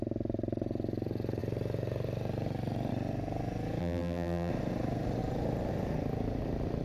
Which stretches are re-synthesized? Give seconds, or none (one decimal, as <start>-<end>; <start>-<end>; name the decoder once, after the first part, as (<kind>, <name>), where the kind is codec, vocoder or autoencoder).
3.8-4.5 (vocoder, BigVGAN v2)